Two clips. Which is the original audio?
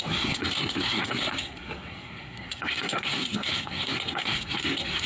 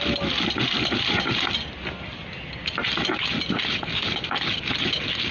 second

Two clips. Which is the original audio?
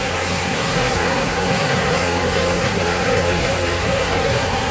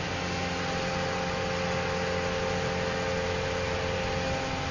second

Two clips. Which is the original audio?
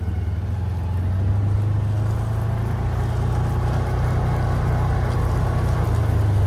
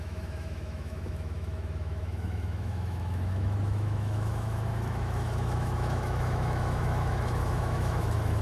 first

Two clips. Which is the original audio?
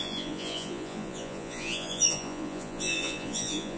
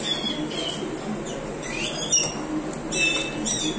second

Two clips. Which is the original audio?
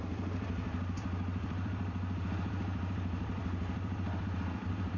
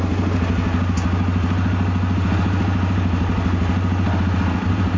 second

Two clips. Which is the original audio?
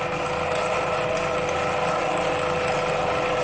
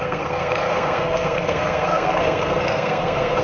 first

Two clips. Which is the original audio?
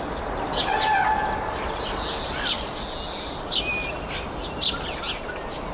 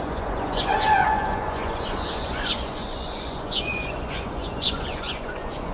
first